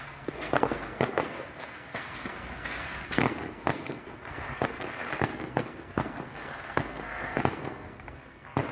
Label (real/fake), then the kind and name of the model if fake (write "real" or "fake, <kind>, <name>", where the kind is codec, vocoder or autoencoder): fake, codec, SNAC